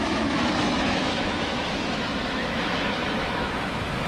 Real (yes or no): no